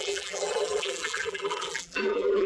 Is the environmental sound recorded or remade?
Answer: remade